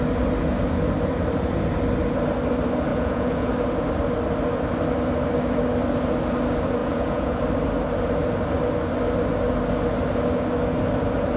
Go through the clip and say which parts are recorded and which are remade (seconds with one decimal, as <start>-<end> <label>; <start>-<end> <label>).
0.0-2.9 recorded; 2.9-3.5 remade; 3.5-6.8 recorded; 6.8-7.4 remade; 7.4-11.4 recorded